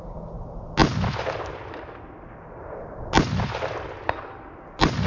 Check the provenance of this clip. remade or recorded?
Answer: recorded